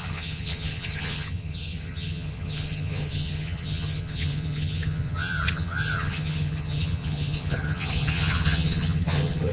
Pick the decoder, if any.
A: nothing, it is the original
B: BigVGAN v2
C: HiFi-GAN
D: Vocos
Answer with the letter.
C